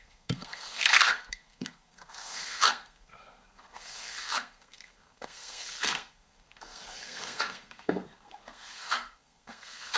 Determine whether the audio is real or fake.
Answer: fake